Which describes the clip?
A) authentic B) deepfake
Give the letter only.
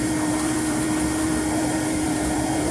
B